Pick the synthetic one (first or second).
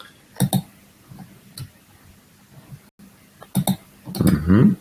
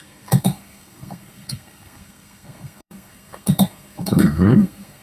second